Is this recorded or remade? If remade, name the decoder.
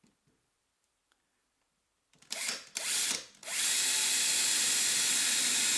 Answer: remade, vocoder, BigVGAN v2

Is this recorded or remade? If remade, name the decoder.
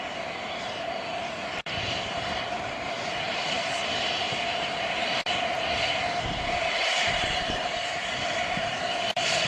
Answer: remade, vocoder, BigVGAN v2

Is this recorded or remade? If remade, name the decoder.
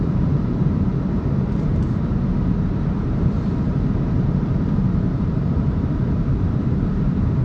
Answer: remade, vocoder, BigVGAN v2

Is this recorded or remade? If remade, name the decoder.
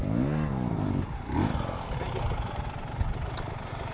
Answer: recorded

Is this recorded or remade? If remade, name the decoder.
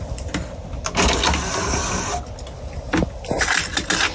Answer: recorded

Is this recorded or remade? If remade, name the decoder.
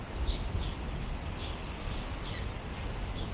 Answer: recorded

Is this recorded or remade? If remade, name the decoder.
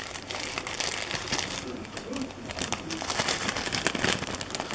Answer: remade, vocoder, BigVGAN v2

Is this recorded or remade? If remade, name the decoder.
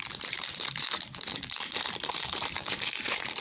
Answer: remade, vocoder, BigVGAN v2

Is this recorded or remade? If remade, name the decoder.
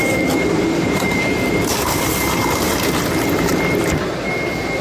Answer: remade, vocoder, BigVGAN v2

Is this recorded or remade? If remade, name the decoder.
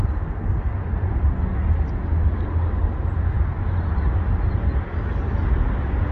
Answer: recorded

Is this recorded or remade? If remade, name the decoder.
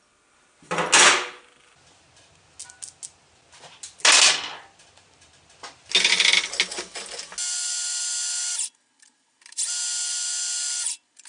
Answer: recorded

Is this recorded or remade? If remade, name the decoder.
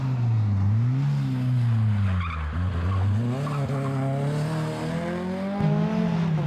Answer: recorded